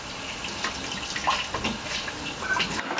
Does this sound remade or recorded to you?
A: recorded